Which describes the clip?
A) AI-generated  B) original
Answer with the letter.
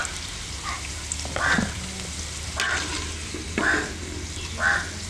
B